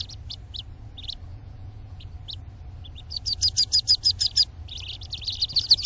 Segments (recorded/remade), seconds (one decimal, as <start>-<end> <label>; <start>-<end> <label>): 0.0-1.3 recorded; 1.3-2.1 remade; 2.1-5.9 recorded